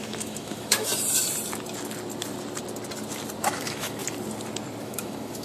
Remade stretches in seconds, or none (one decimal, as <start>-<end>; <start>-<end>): 0.0-0.9; 3.4-4.0; 4.8-5.4